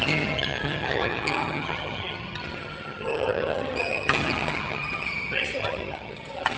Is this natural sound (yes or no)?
no